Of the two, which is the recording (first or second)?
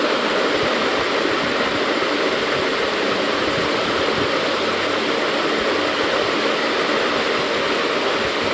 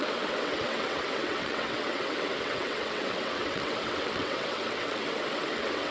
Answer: first